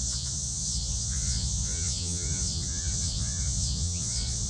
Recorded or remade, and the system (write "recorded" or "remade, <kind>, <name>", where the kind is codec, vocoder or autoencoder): remade, vocoder, Vocos